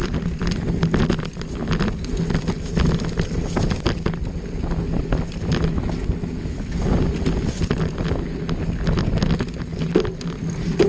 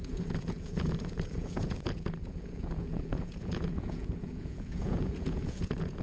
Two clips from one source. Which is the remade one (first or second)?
second